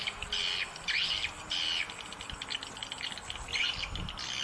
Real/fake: real